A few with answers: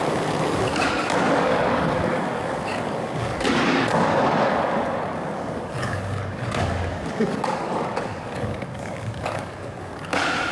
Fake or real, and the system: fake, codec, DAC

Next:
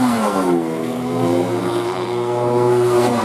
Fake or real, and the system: fake, codec, SNAC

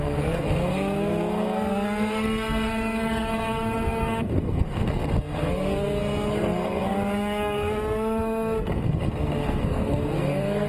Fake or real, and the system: fake, codec, SNAC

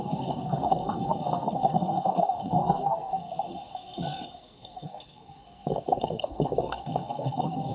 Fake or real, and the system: fake, codec, SNAC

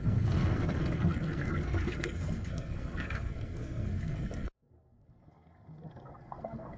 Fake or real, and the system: fake, codec, SNAC